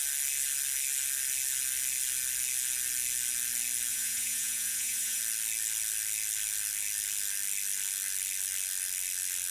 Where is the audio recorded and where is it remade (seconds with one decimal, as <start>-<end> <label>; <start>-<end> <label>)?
0.0-3.9 recorded; 3.9-5.2 remade; 5.2-9.5 recorded